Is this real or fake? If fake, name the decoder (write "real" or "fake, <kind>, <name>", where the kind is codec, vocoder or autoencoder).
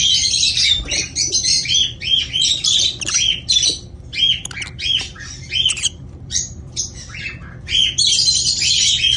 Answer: fake, vocoder, BigVGAN v2